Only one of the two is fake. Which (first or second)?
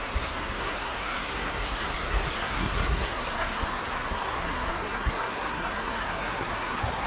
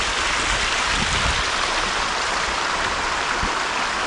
first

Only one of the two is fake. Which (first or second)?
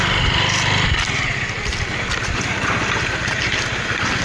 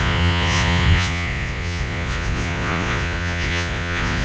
second